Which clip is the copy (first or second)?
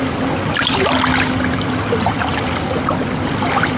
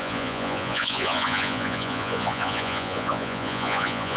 second